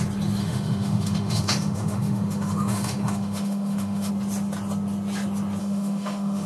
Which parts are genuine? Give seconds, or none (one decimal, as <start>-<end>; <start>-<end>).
0.0-0.4; 4.1-5.6